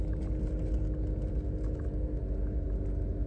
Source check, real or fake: real